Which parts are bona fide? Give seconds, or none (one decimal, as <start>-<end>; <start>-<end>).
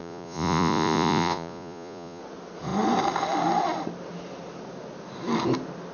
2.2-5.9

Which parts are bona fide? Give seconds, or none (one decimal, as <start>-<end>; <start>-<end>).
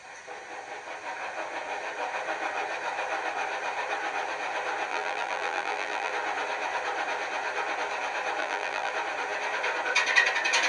0.0-4.9; 6.1-8.4; 8.9-10.7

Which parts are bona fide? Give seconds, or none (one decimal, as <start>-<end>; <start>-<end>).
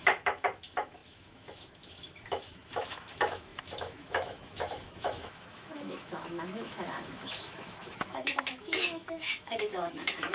none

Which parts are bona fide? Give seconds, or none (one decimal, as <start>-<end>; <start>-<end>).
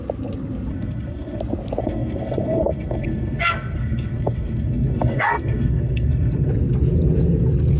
0.0-0.7; 1.4-1.8; 6.5-7.8